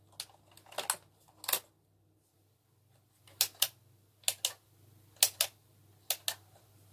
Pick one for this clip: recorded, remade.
recorded